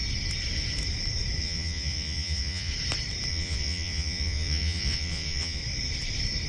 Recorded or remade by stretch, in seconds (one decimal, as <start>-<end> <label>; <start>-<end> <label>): 0.0-1.4 recorded; 1.4-2.7 remade; 2.7-3.3 recorded; 3.3-5.6 remade; 5.6-6.5 recorded